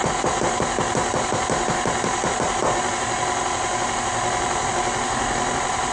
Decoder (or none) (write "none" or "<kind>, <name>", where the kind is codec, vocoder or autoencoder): none